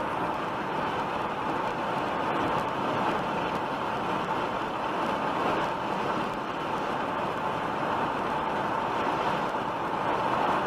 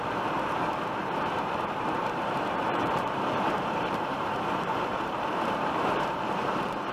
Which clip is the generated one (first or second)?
second